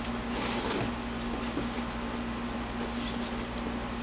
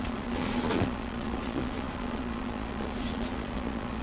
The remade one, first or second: second